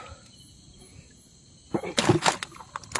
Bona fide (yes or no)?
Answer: yes